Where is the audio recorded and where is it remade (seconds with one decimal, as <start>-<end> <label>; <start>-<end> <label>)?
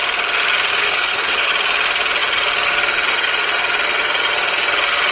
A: 0.0-0.8 recorded; 0.8-1.5 remade; 1.5-5.1 recorded